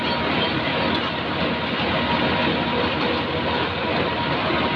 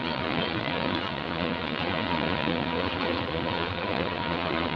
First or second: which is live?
first